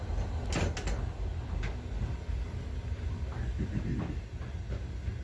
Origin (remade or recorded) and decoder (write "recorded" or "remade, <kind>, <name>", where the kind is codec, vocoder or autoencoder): recorded